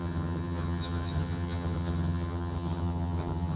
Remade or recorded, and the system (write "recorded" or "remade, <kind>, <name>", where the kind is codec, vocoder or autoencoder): remade, vocoder, HiFi-GAN